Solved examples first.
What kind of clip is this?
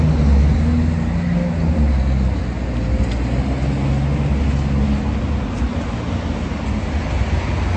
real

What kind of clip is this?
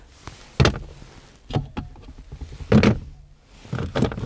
real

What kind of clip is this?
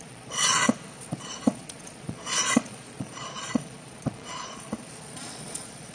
fake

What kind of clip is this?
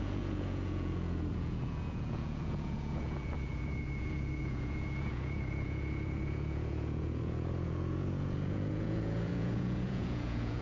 fake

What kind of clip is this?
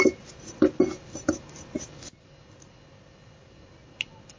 real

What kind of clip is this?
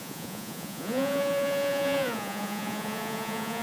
fake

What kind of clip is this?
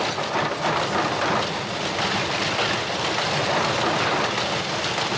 real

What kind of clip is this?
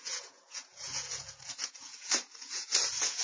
fake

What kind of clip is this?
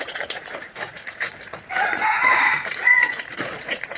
fake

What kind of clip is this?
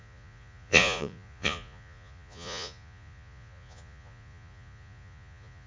fake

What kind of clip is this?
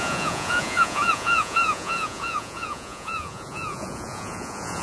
fake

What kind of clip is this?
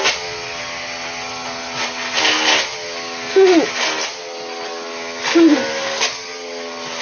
real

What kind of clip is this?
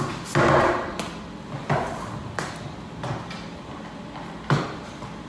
real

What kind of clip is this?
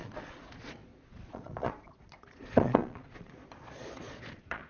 fake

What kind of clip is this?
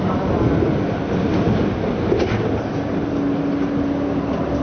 real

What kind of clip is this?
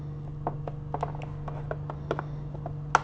real